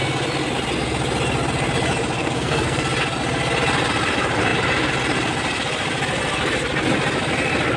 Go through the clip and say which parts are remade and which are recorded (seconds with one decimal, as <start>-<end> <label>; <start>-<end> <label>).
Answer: 0.0-2.2 recorded; 2.2-2.8 remade; 2.8-7.8 recorded